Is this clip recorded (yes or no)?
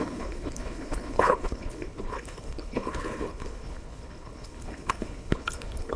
no